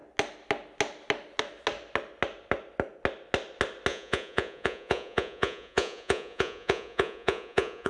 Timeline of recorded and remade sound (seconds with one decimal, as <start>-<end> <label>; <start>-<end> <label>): 0.0-3.9 recorded; 3.9-7.9 remade